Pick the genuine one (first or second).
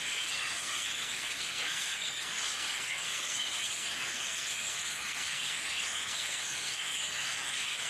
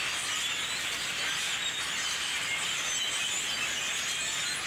second